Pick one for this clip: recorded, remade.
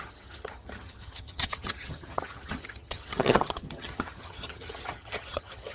remade